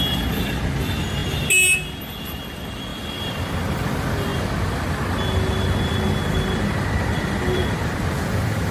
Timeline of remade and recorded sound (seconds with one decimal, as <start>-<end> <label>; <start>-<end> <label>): 0.0-1.2 remade; 1.2-2.2 recorded; 2.2-4.3 remade; 4.3-7.1 recorded; 7.1-8.7 remade